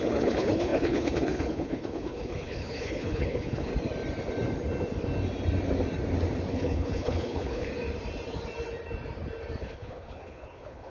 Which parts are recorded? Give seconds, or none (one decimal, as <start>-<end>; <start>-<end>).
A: 3.7-6.5; 7.7-9.6

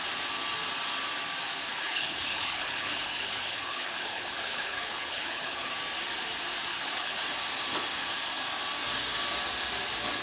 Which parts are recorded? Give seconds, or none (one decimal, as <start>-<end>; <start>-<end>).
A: 0.0-1.7; 5.7-6.7; 7.2-10.2

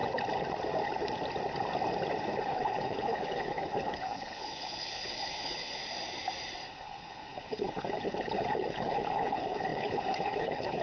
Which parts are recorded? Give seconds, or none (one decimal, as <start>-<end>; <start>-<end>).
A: 0.0-2.4; 5.8-6.7

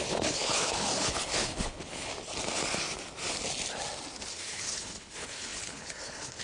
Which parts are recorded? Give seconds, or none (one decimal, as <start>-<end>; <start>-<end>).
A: 2.1-4.3

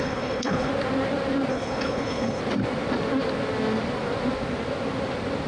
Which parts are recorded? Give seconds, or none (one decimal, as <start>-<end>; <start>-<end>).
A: 0.7-1.5; 2.4-5.5